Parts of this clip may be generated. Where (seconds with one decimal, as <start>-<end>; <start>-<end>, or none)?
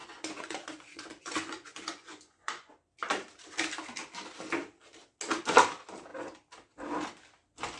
0.0-2.7